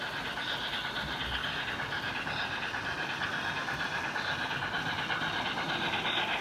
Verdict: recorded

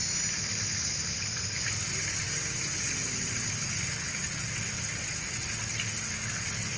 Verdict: recorded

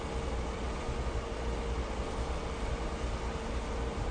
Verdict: recorded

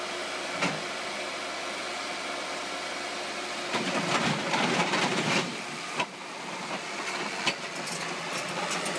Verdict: recorded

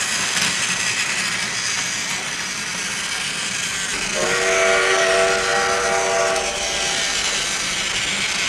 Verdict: recorded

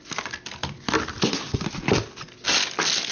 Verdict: recorded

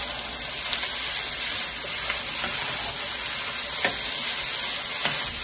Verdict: recorded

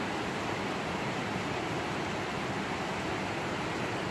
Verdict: recorded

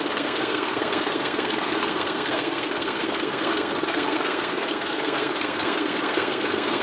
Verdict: remade